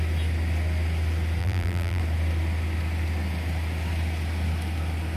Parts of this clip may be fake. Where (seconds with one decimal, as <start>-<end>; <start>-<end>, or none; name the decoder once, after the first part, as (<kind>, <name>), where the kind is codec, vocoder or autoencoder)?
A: 1.4-2.0 (vocoder, BigVGAN v2)